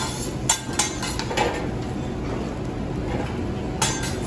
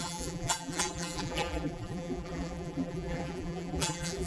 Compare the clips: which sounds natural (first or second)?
first